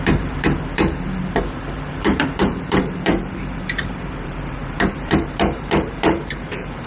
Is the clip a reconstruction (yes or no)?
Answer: yes